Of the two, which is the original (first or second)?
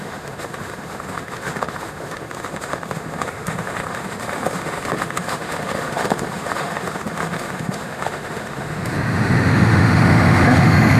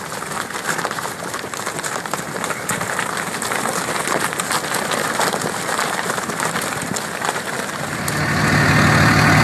second